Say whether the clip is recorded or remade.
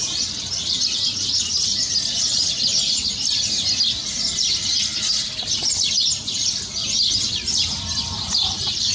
recorded